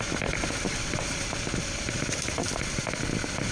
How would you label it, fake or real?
real